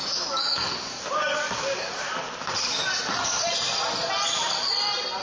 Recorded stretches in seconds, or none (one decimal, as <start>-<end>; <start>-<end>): 0.7-5.2